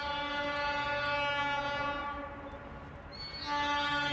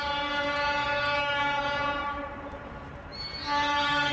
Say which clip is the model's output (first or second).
second